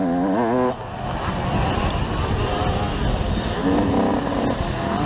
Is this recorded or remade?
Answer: recorded